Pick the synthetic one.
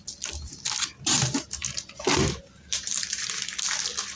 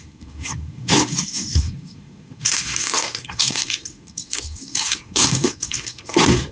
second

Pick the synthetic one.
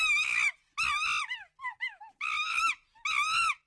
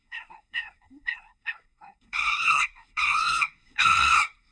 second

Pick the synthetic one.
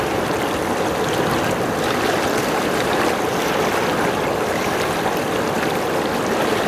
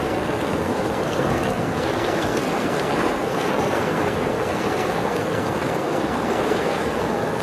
second